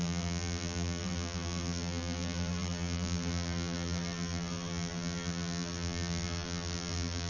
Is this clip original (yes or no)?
no